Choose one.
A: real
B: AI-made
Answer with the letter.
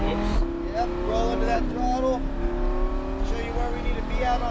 A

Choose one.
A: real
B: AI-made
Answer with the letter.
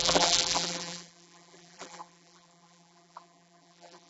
B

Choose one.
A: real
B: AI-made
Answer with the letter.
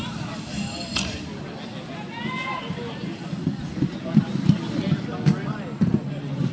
A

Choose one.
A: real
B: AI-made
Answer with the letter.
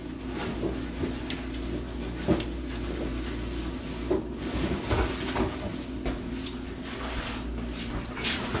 A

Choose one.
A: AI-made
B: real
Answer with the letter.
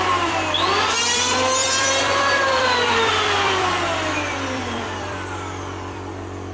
A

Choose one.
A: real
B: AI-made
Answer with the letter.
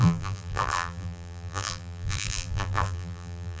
B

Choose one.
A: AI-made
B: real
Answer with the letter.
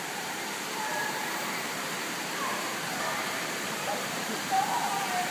A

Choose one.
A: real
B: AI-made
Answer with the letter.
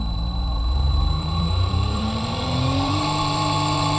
B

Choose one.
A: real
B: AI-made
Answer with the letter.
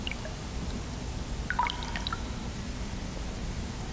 A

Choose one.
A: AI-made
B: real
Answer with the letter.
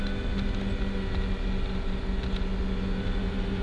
B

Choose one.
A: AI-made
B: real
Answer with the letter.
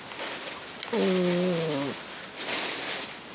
B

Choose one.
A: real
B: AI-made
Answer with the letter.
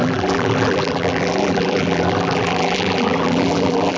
B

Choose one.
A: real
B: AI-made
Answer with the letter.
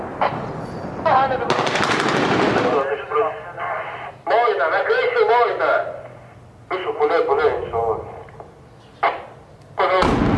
A